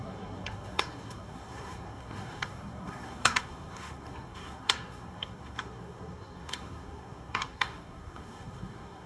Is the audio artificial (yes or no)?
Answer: yes